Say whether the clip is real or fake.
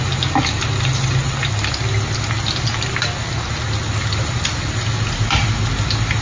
real